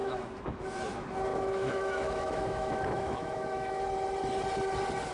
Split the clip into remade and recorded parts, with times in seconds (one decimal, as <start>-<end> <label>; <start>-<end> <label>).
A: 0.0-0.6 remade; 0.6-1.3 recorded; 1.3-3.8 remade; 3.8-5.1 recorded